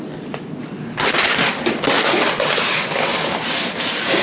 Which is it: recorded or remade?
recorded